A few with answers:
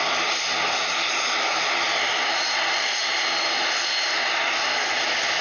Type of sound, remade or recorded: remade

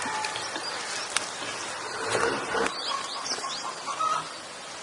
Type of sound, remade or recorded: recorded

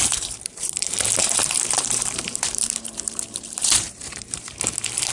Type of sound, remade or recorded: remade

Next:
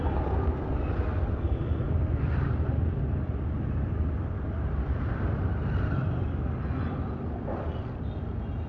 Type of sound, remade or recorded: recorded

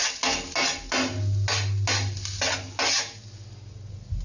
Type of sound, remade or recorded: recorded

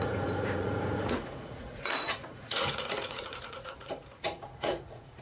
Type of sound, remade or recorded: remade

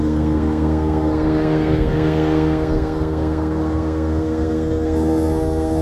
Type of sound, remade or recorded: remade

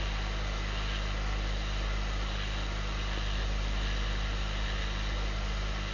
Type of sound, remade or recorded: recorded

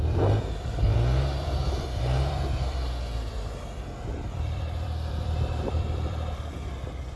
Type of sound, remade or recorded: remade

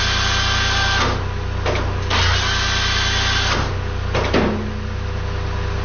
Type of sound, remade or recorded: recorded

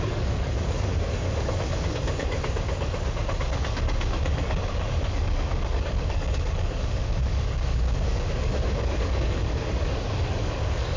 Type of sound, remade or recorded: remade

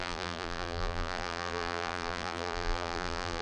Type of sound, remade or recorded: remade